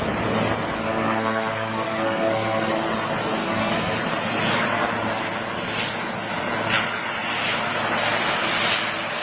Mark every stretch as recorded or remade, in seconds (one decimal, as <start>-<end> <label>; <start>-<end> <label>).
0.0-0.8 recorded; 0.8-2.7 remade; 2.7-3.4 recorded; 3.4-4.0 remade; 4.0-9.2 recorded